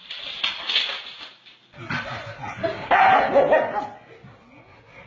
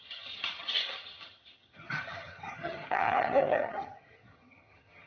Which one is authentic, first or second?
first